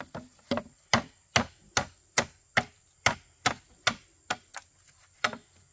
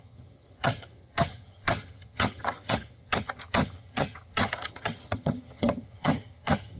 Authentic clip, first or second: first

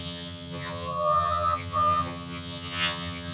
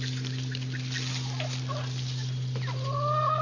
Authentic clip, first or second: second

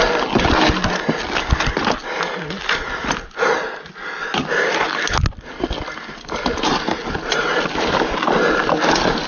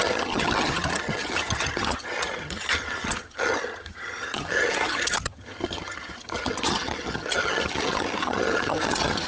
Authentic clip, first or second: first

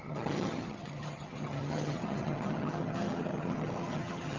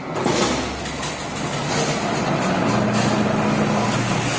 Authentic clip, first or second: second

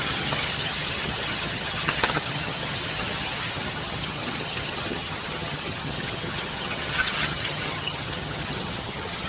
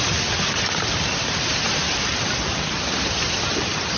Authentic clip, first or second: second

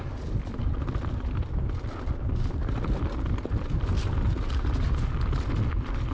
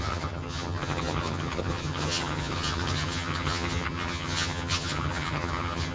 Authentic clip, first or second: first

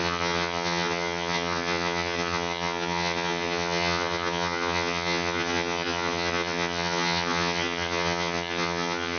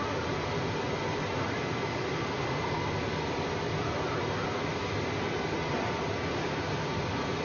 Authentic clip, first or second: second